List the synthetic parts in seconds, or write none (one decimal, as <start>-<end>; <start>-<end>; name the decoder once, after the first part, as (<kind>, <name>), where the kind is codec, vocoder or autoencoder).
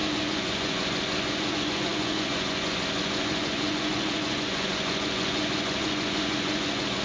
0.0-7.0 (vocoder, Vocos)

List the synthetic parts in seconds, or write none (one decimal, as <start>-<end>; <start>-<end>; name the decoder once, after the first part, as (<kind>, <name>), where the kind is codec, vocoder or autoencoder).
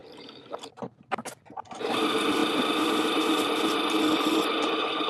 0.0-0.7 (vocoder, BigVGAN v2)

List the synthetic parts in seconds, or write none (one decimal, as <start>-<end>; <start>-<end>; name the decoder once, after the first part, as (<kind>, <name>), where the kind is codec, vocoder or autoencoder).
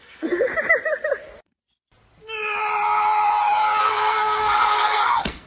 0.0-0.5 (codec, SNAC); 3.8-5.5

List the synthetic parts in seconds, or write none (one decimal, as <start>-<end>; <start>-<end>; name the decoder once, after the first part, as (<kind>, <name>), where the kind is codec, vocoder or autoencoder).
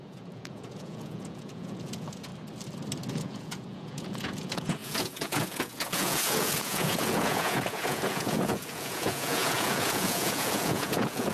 0.0-2.3 (vocoder, Vocos); 3.1-11.3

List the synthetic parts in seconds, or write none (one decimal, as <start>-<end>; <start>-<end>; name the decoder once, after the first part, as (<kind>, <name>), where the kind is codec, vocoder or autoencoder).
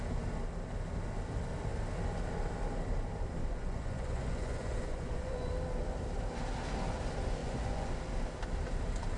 3.4-5.5 (vocoder, Vocos); 7.4-7.9